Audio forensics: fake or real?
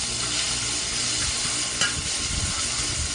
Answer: real